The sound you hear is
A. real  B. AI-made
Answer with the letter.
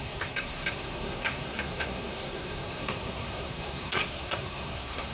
B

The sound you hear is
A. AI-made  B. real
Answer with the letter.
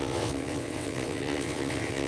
A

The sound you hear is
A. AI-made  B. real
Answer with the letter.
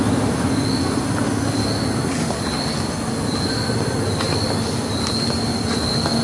B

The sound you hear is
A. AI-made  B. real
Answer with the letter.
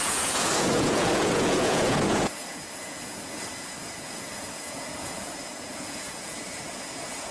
A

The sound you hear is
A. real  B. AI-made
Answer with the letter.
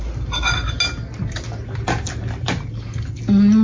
A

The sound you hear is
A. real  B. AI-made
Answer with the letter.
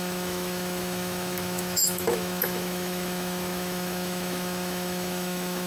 B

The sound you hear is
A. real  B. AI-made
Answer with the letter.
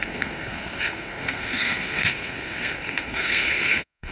B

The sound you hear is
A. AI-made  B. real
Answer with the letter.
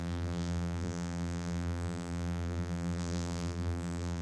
A